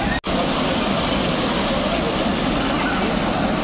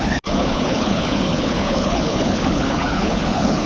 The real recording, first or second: first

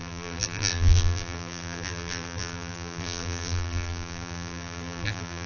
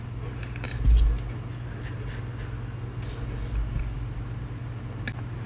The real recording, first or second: second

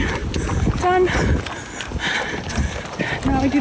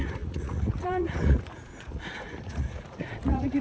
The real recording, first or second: first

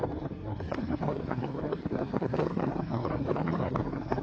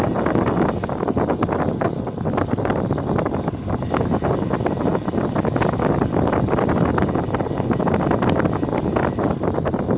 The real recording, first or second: second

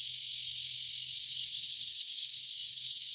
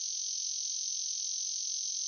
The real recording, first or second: second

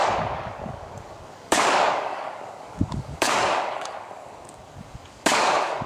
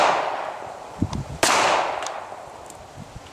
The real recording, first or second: second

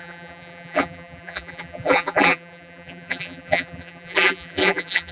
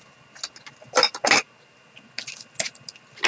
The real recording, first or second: second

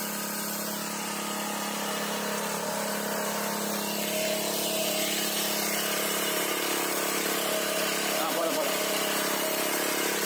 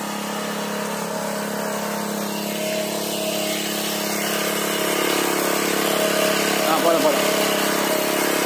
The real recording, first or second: second